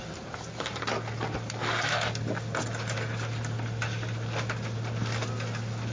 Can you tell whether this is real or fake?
real